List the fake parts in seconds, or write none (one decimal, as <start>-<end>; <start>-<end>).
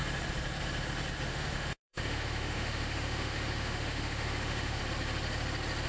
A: 1.3-4.8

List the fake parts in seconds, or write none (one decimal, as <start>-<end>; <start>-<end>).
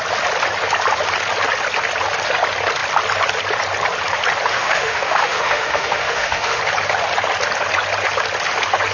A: 4.5-6.6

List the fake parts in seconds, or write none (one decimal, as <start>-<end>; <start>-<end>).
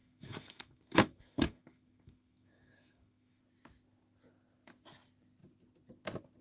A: 0.0-3.4